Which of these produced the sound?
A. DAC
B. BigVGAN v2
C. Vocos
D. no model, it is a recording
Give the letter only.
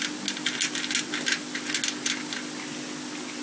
D